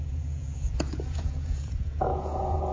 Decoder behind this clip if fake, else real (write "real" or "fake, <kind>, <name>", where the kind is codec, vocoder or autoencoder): fake, vocoder, Vocos